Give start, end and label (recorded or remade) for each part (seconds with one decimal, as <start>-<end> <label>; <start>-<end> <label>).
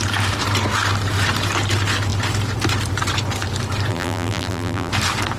0.0-3.9 recorded; 3.9-4.9 remade; 4.9-5.4 recorded